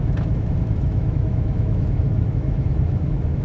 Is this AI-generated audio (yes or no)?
yes